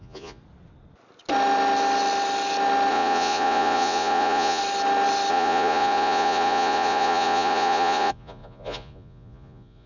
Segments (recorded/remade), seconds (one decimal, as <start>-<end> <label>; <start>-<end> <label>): 0.0-0.4 remade; 0.4-2.9 recorded; 2.9-4.6 remade; 4.6-5.3 recorded; 5.3-9.9 remade